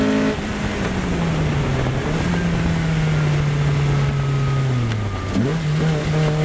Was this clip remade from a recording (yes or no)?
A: no